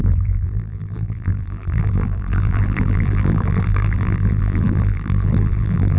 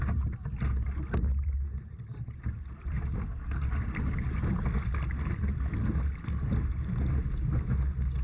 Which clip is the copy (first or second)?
first